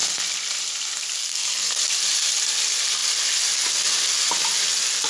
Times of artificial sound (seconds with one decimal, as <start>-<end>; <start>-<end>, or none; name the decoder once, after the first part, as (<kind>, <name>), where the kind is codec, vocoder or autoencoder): 1.2-1.8 (codec, SNAC)